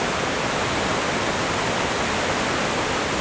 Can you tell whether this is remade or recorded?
recorded